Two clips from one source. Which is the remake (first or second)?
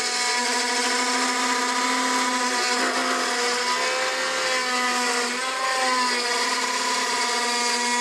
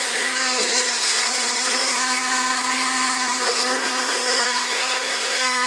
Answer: second